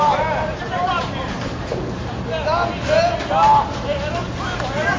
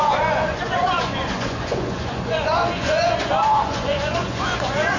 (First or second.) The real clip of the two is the first